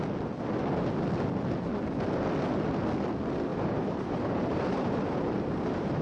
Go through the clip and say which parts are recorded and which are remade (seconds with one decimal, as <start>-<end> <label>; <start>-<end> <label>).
0.0-3.5 recorded; 3.5-6.0 remade

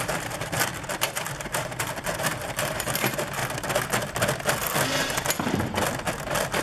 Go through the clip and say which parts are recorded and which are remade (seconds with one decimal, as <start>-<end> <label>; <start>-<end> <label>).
0.0-0.7 remade; 0.7-1.4 recorded; 1.4-3.4 remade; 3.4-6.6 recorded

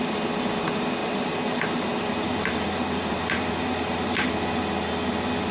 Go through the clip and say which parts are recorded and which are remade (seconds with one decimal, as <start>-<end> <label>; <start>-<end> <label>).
0.0-1.0 recorded; 1.0-4.3 remade; 4.3-5.5 recorded

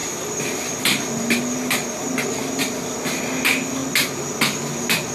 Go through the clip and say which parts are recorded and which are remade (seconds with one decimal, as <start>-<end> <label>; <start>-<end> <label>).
0.0-1.7 remade; 1.7-2.4 recorded; 2.4-3.2 remade; 3.2-5.1 recorded

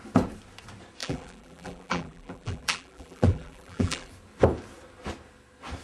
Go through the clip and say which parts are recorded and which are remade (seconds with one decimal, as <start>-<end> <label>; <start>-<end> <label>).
0.0-1.0 recorded; 1.0-4.1 remade; 4.1-5.8 recorded

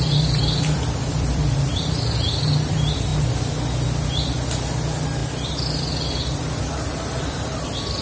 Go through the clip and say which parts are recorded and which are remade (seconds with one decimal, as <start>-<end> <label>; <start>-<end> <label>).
0.0-3.1 remade; 3.1-4.0 recorded; 4.0-8.0 remade

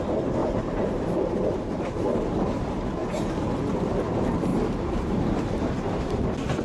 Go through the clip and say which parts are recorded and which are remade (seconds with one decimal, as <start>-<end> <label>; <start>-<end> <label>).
0.0-0.4 recorded; 0.4-2.2 remade; 2.2-4.5 recorded; 4.5-6.0 remade; 6.0-6.6 recorded

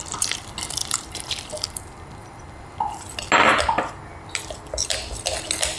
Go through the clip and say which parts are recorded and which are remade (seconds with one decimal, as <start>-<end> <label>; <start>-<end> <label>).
0.0-5.8 recorded